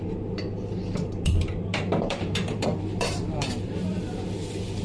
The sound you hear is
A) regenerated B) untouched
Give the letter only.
A